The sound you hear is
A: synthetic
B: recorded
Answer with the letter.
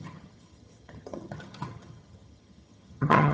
A